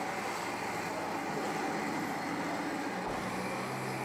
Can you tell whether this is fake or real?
real